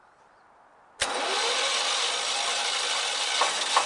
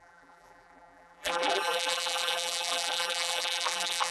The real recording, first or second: first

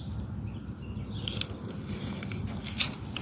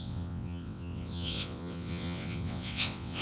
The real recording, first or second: first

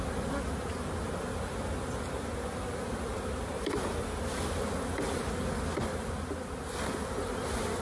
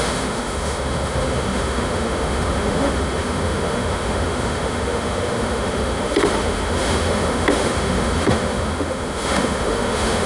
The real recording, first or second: first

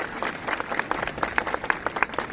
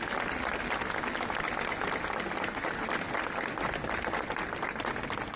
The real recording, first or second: second